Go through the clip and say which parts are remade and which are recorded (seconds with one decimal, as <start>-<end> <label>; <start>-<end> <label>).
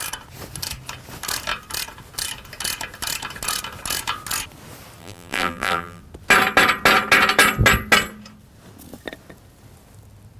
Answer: 0.0-5.0 recorded; 5.0-6.0 remade; 6.0-10.4 recorded